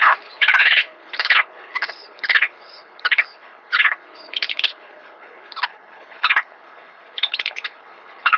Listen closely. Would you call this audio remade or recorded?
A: remade